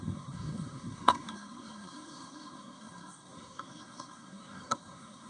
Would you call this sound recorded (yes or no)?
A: no